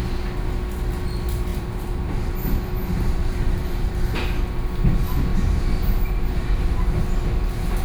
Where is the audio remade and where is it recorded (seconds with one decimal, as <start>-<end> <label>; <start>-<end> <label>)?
0.0-1.5 recorded; 1.5-3.9 remade; 3.9-5.3 recorded; 5.3-6.8 remade; 6.8-7.8 recorded